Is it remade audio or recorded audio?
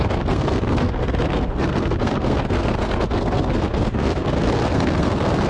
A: remade